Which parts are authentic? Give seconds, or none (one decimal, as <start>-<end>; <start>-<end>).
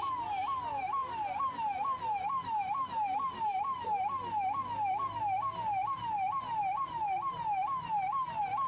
0.0-8.7